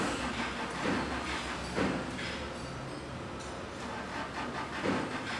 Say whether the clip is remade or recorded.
recorded